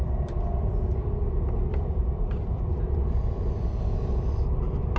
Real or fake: fake